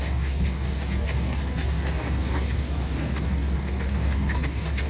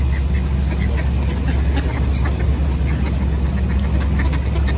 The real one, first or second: second